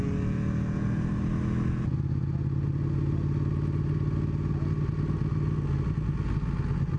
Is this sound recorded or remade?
recorded